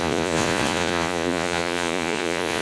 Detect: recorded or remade remade